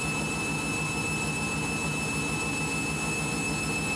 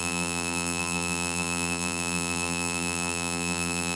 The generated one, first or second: second